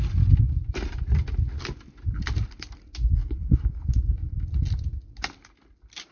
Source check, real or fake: real